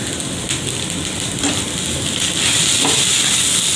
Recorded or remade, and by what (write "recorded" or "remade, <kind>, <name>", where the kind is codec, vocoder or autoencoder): recorded